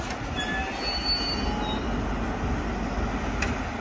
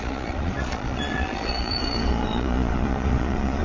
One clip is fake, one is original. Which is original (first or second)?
first